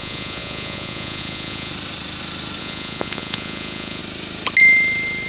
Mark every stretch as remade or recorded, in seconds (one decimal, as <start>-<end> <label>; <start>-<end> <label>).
0.0-1.7 remade; 1.7-2.6 recorded; 2.6-4.0 remade; 4.0-5.3 recorded